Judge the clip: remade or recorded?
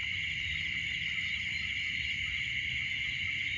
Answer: recorded